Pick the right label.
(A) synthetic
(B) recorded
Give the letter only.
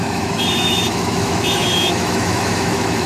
A